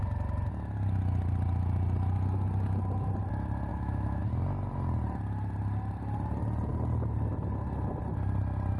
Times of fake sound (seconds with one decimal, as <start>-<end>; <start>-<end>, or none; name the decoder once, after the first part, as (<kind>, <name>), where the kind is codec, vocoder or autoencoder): 3.7-4.2 (autoencoder, DAC-VAE)